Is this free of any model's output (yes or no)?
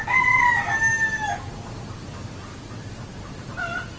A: yes